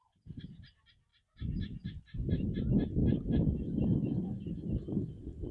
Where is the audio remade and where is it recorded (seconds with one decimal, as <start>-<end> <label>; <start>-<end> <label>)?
0.0-5.5 recorded